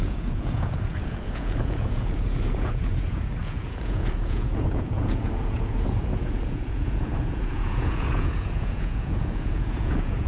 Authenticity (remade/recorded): remade